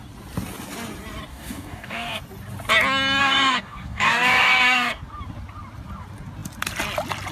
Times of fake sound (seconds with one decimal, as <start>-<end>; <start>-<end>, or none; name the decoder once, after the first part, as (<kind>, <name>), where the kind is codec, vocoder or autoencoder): 1.3-2.2 (codec, DAC); 3.2-5.0